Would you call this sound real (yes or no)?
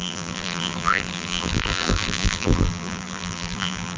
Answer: no